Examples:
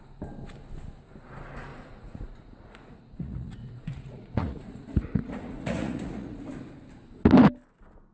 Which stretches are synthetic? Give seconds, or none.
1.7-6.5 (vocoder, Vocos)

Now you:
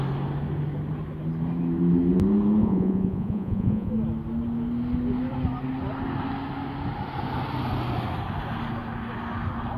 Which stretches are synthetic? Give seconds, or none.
2.6-3.9 (vocoder, Vocos)

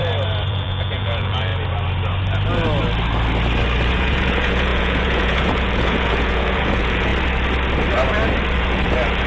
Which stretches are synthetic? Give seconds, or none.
0.5-1.5 (vocoder, Vocos); 3.9-7.1; 8.6-9.3

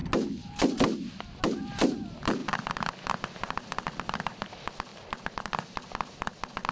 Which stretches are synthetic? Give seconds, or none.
none